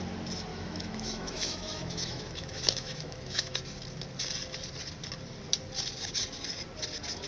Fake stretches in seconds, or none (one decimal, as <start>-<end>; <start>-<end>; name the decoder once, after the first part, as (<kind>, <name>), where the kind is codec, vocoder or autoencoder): 0.5-3.6 (autoencoder, DAC-VAE)